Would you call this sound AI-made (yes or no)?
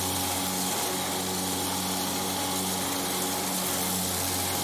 no